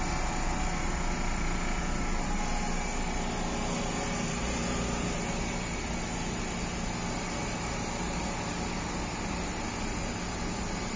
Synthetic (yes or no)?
no